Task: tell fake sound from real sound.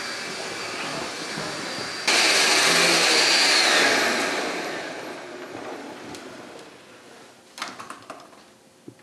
real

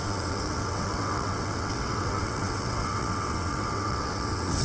fake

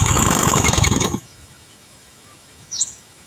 fake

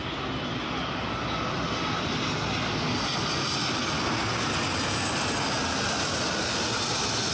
real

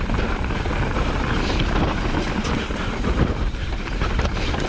real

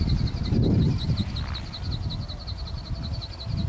real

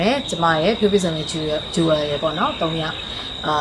real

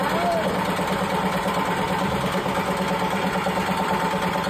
real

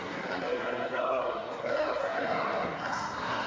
fake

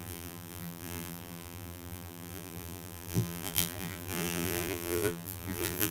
fake